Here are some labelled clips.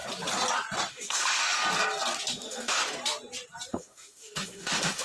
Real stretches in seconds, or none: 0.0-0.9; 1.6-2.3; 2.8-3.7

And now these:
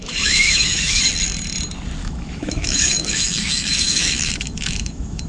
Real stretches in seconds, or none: 1.0-2.0

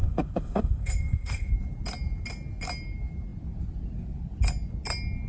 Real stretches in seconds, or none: 1.5-5.3

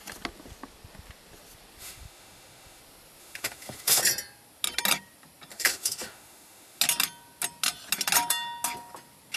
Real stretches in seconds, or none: 0.0-1.8; 2.8-3.2; 4.0-5.5; 6.8-9.4

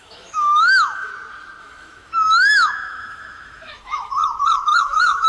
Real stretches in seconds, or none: 1.1-1.6; 4.2-4.8

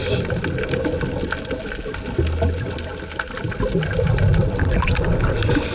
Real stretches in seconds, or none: 0.0-5.7